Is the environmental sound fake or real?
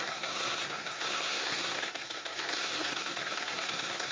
fake